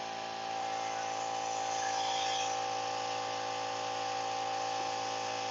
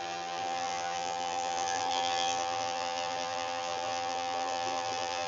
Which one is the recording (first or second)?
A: first